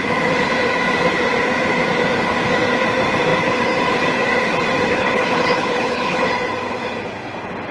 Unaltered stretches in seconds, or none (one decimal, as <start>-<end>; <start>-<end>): 0.0-4.9; 6.3-7.7

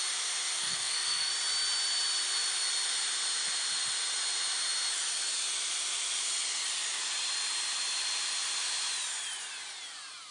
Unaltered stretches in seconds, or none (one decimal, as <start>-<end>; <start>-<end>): 0.0-0.6; 1.3-10.3

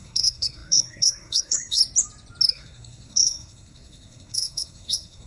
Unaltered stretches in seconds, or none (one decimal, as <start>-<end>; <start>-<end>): 1.8-2.5

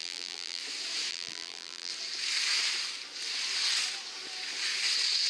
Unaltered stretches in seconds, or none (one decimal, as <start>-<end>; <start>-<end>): 0.6-1.1; 1.9-5.3

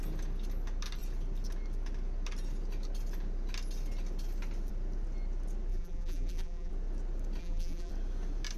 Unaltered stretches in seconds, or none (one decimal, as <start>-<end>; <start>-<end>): 0.0-5.7; 6.7-7.4; 7.9-8.6

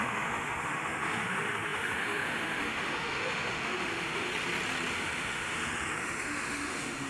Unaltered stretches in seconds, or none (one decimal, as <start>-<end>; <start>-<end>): 4.3-4.9